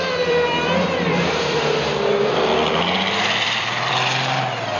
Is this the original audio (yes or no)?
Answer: no